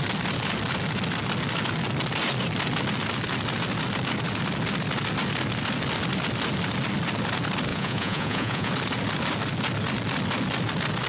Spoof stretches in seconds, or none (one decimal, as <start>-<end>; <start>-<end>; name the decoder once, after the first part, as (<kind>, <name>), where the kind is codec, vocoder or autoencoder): 7.7-8.7 (vocoder, Vocos)